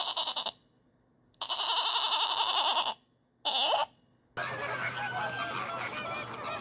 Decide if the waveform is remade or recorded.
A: recorded